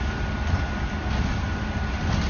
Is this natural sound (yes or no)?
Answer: yes